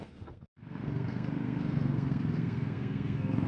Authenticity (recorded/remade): remade